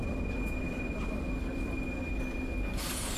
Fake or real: real